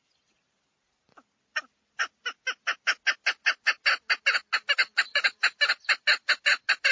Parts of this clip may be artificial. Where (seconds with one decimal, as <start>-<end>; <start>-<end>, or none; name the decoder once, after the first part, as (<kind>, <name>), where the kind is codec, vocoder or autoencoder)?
4.8-5.4 (vocoder, WaveNeXt)